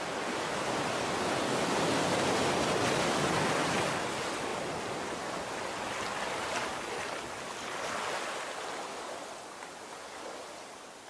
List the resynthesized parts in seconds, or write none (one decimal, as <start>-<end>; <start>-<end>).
none

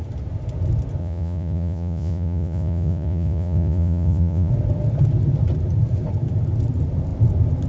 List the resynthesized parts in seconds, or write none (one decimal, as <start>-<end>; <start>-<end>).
1.0-4.5